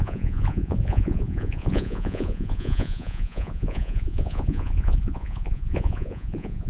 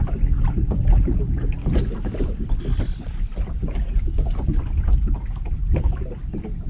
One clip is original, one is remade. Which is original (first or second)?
second